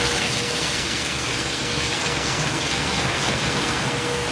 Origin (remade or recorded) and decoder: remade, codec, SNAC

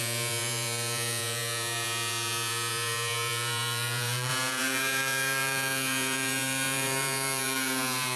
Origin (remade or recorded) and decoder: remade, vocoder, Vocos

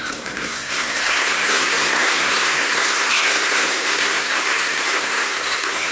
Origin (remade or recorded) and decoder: remade, codec, SNAC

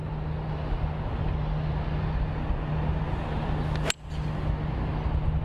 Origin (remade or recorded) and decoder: recorded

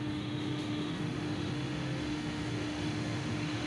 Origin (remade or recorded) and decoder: remade, autoencoder, DAC-VAE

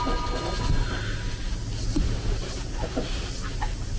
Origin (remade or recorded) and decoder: recorded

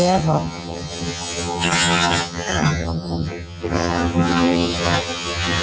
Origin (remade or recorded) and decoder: remade, vocoder, HiFi-GAN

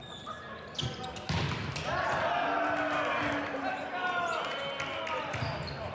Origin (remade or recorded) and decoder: recorded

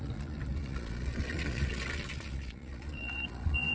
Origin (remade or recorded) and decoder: remade, vocoder, Vocos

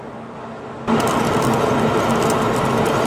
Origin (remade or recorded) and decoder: recorded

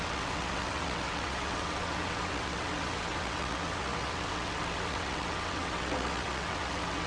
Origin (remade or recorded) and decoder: remade, vocoder, WaveNeXt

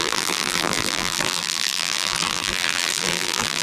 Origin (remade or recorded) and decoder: remade, vocoder, BigVGAN v2